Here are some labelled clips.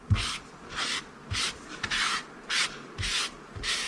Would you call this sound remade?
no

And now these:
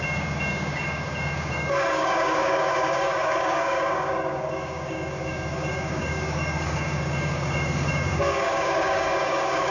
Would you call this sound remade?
yes